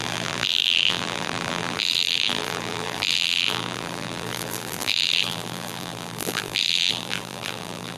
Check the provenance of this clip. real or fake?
fake